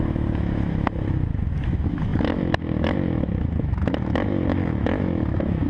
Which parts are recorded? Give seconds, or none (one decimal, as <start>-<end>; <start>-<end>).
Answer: none